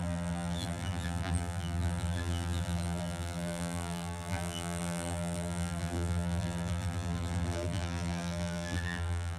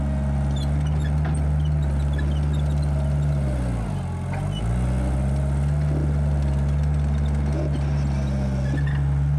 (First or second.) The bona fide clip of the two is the second